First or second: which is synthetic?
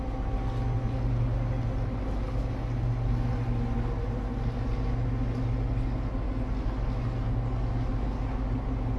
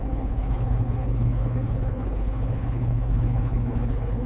second